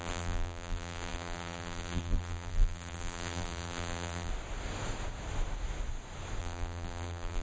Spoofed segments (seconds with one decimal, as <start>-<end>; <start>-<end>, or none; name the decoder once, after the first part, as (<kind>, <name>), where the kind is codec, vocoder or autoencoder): 0.0-4.3 (vocoder, BigVGAN v2); 6.4-7.4